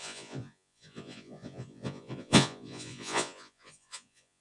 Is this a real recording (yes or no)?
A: no